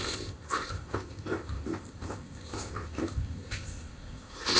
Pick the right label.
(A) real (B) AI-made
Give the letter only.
B